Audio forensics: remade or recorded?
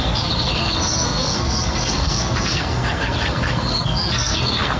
remade